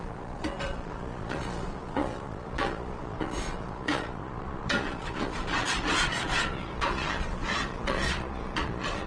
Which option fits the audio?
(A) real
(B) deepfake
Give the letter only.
B